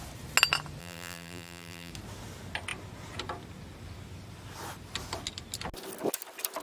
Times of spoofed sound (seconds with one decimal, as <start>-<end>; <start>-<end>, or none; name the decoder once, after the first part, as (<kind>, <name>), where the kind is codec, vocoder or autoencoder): 0.8-1.9 (vocoder, BigVGAN v2)